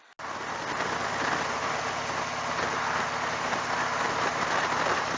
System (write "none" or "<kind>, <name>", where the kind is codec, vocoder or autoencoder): none